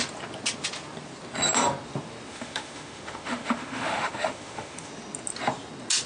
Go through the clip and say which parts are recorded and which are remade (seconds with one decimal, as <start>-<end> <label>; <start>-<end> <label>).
0.0-2.3 recorded; 2.3-4.9 remade; 4.9-6.1 recorded